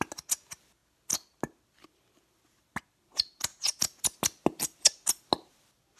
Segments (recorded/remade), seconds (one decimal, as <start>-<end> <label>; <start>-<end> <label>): 0.0-6.0 recorded